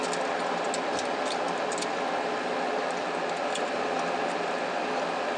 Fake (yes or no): no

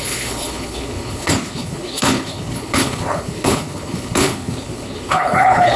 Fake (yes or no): yes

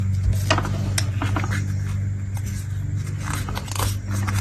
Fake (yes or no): no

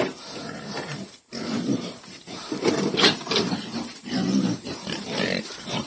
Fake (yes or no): yes